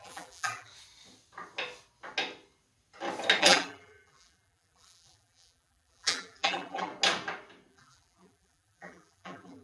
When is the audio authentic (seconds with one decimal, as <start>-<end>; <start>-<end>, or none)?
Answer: 0.7-3.4; 6.9-7.7